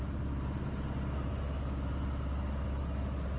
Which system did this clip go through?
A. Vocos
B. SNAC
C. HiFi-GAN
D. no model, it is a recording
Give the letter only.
D